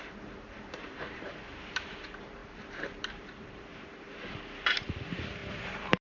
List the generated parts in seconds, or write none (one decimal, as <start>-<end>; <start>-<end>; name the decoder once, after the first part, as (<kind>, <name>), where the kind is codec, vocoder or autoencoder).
0.0-6.0 (vocoder, BigVGAN v2)